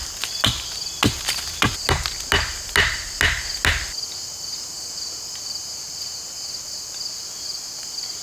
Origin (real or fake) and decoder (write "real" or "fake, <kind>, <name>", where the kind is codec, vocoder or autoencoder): real